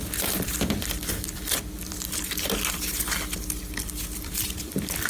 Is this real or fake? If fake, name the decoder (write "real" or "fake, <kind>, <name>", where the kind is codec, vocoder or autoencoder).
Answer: fake, vocoder, BigVGAN v2